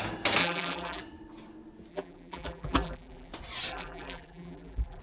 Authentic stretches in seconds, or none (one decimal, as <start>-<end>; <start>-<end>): 0.0-0.4; 1.0-1.9; 3.3-3.7